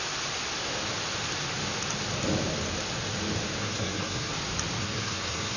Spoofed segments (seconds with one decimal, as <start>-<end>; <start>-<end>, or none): 3.6-4.3; 4.8-5.6